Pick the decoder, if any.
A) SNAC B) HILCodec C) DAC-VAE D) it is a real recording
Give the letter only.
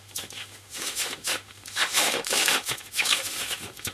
C